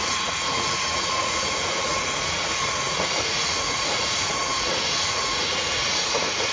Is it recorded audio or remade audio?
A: remade